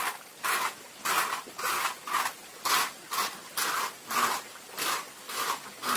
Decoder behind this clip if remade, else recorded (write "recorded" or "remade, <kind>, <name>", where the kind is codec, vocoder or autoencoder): recorded